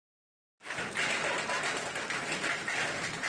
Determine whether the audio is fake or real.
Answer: real